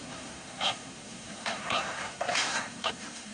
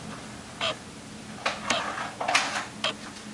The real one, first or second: second